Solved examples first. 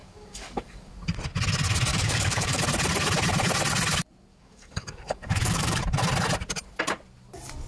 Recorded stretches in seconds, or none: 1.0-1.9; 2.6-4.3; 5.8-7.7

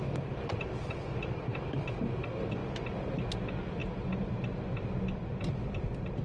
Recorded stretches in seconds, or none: 0.0-6.2